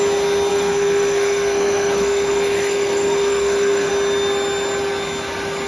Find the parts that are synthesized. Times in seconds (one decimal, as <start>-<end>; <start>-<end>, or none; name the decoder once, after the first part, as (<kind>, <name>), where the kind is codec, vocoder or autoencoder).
0.5-3.9 (codec, SNAC)